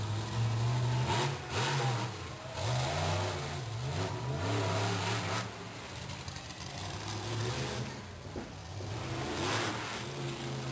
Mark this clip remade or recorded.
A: recorded